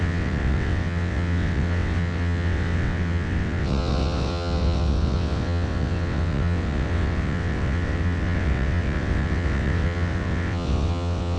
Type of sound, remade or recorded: remade